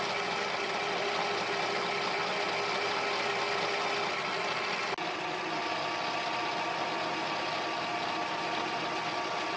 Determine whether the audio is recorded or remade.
recorded